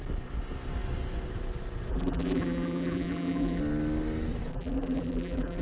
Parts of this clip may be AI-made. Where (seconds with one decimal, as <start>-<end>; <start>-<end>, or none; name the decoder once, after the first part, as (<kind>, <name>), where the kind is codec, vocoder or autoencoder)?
1.9-3.6 (vocoder, BigVGAN v2); 4.5-5.6